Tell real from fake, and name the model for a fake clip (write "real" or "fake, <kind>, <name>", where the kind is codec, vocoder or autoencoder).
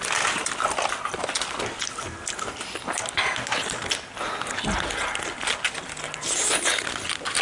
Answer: real